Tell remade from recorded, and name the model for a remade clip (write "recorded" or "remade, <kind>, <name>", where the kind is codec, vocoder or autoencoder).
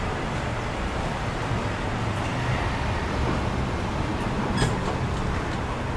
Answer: recorded